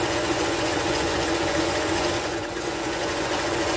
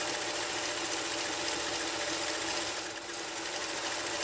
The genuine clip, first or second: second